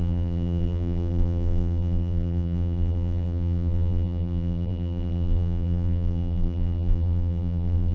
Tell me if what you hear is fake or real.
fake